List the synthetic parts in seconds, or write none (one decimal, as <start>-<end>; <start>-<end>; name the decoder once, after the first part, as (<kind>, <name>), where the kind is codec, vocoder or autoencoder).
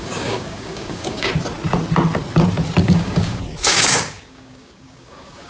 0.0-1.3 (codec, DAC); 2.8-5.5